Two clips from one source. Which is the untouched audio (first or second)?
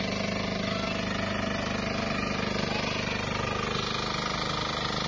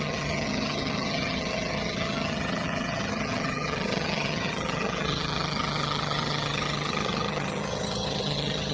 first